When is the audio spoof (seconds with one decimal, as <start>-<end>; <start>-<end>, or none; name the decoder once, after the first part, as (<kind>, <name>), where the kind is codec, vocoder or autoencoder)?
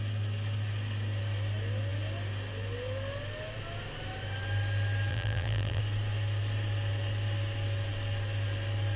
5.1-5.8 (vocoder, BigVGAN v2)